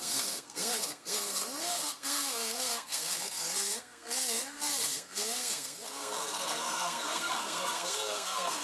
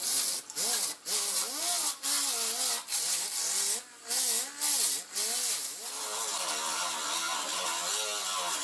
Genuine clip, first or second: second